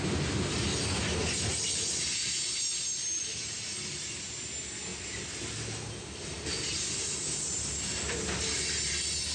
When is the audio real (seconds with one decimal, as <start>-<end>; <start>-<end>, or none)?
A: 0.0-9.3